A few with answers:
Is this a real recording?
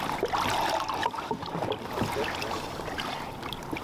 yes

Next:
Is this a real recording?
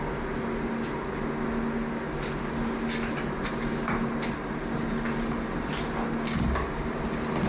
yes